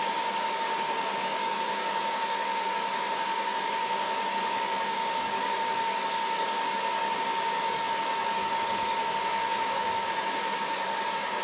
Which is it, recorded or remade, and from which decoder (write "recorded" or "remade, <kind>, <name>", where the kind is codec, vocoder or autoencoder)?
remade, codec, DAC